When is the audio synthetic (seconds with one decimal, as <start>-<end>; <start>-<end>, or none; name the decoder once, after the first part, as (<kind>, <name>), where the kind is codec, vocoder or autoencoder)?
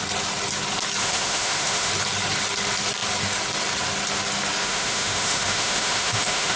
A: 1.0-1.9 (autoencoder, DAC-VAE); 4.6-6.6